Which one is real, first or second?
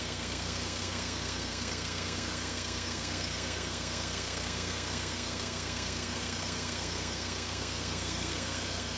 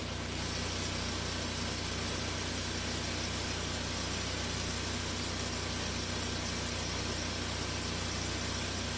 second